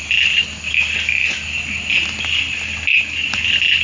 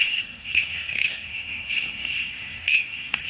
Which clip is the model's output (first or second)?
second